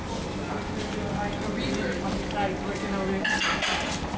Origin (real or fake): real